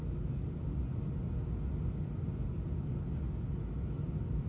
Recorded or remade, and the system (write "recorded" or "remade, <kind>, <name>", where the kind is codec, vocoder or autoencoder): recorded